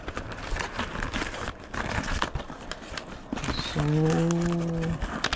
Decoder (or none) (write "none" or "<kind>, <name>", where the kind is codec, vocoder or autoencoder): none